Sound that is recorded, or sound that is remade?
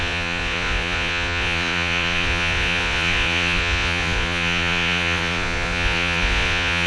remade